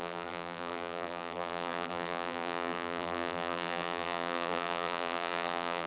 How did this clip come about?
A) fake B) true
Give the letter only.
A